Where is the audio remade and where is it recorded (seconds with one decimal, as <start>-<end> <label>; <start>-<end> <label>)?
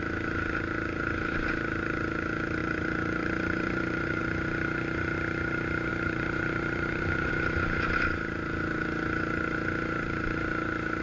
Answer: 0.0-2.6 recorded; 2.6-4.2 remade; 4.2-5.9 recorded; 5.9-7.3 remade; 7.3-11.0 recorded